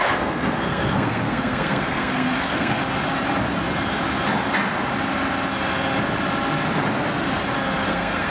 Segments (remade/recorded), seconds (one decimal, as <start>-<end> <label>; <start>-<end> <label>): 0.0-2.8 remade; 2.8-7.8 recorded; 7.8-8.3 remade